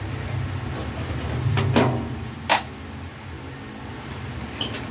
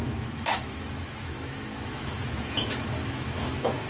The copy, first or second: second